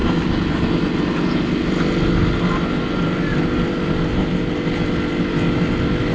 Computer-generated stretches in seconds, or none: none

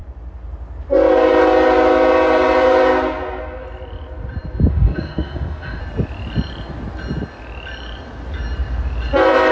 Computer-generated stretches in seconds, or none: 4.7-5.8 (autoencoder, DAC-VAE)

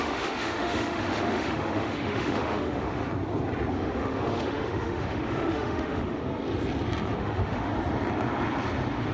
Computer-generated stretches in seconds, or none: 0.0-3.0 (autoencoder, DAC-VAE); 3.7-6.2; 7.2-7.7

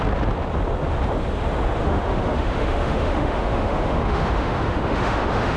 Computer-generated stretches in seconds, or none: 1.8-5.6 (autoencoder, DAC-VAE)

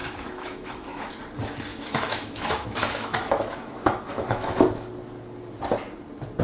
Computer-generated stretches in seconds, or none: 0.0-1.1 (autoencoder, DAC-VAE); 1.7-4.6